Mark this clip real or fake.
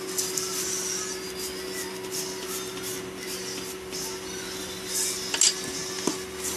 real